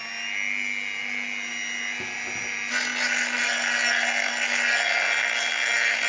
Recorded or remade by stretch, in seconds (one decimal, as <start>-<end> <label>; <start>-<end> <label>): 0.0-6.1 recorded